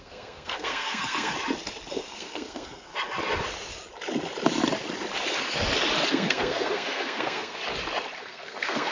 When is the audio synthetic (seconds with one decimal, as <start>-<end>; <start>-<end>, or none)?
0.0-1.3; 1.9-2.9; 6.1-7.6; 8.2-8.9